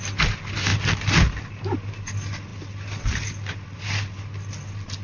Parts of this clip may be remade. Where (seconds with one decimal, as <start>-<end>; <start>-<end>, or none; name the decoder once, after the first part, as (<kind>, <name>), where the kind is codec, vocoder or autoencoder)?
0.7-1.5 (vocoder, BigVGAN v2); 2.5-3.5

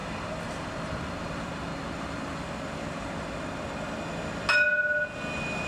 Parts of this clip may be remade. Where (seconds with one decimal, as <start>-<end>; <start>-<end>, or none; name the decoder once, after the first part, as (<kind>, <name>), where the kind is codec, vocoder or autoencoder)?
0.0-3.3 (vocoder, BigVGAN v2)

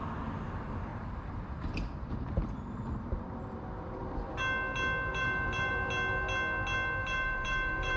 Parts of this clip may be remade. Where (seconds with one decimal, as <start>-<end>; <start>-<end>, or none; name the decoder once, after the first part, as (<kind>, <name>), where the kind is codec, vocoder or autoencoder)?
0.9-4.3 (vocoder, BigVGAN v2); 5.1-5.7; 7.0-8.0

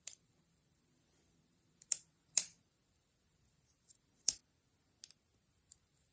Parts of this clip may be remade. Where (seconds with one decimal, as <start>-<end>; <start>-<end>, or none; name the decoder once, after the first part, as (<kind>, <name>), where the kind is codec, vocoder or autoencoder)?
0.0-4.4 (vocoder, BigVGAN v2); 5.5-6.1